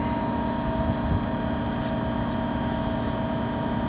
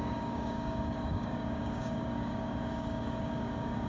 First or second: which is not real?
second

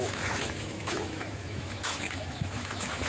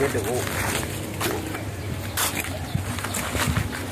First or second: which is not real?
first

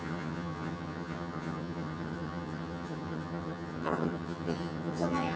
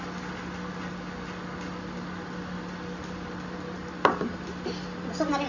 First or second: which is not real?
first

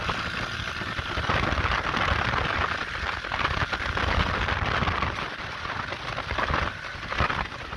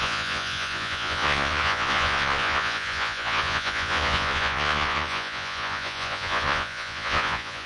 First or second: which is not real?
second